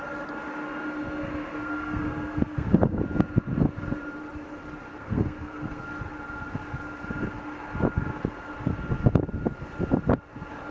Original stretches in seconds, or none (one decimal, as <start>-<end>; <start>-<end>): 0.0-1.5; 3.0-4.9; 5.9-10.7